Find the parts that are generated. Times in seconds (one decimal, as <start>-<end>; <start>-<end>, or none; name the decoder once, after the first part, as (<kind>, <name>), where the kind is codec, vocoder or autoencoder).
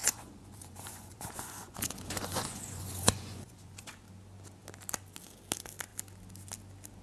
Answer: 0.0-3.9 (vocoder, Vocos)